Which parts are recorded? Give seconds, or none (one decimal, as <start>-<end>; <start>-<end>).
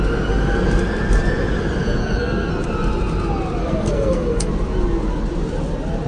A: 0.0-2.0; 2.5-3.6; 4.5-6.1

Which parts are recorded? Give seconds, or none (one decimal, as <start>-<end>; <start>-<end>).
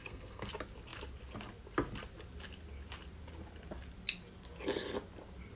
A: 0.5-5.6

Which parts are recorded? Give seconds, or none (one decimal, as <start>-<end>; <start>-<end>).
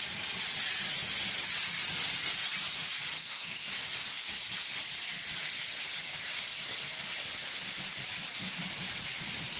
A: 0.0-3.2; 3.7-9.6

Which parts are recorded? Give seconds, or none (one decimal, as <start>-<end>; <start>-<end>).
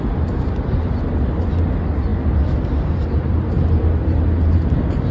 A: 0.0-5.1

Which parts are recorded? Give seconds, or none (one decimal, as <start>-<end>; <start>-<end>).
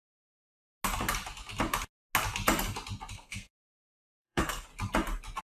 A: 0.0-3.1; 4.7-5.4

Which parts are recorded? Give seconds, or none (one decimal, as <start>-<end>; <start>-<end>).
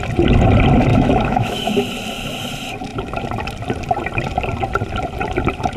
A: 0.0-0.9; 1.7-5.8